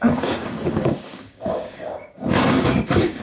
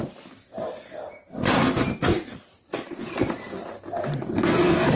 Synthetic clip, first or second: first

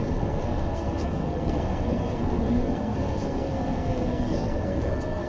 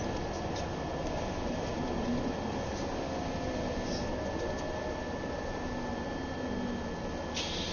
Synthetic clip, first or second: first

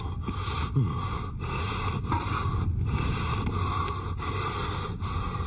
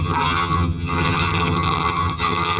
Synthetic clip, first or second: second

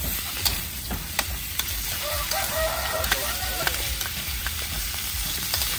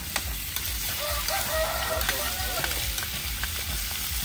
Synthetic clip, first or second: first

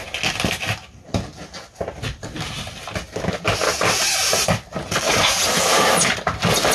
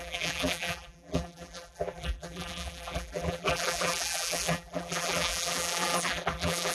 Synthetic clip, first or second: second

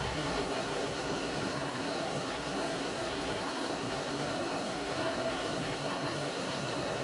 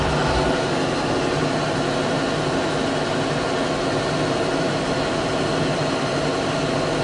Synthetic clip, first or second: first